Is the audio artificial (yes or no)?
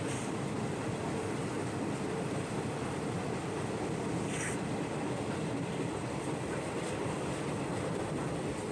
no